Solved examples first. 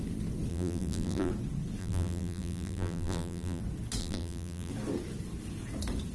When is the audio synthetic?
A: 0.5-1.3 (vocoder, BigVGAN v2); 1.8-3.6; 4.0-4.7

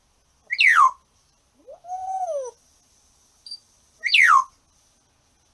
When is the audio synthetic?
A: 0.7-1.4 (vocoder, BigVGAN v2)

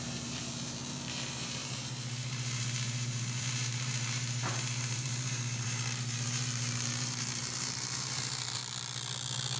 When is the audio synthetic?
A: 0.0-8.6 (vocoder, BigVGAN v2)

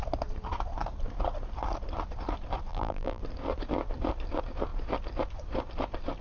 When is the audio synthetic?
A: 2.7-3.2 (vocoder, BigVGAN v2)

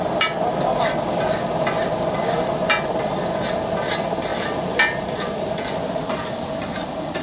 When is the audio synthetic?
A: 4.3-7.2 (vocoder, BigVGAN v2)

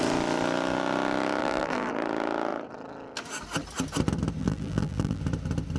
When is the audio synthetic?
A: 1.4-1.9 (vocoder, BigVGAN v2); 4.4-5.2